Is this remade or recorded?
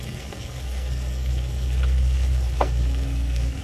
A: remade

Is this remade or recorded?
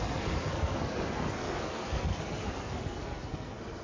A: remade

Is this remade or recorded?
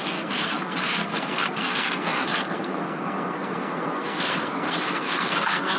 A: remade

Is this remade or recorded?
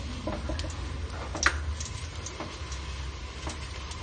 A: recorded